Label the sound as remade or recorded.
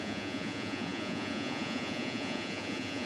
remade